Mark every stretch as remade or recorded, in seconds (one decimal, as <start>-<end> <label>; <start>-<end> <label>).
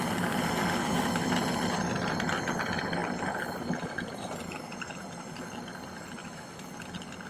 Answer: 0.0-0.8 recorded; 0.8-1.3 remade; 1.3-6.2 recorded; 6.2-6.7 remade; 6.7-7.3 recorded